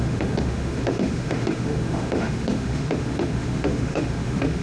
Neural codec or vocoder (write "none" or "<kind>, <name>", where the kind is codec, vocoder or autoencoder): autoencoder, DAC-VAE